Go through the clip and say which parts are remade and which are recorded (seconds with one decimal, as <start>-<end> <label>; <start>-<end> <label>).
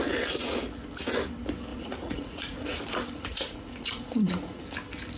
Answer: 0.0-1.7 recorded; 1.7-4.6 remade; 4.6-5.2 recorded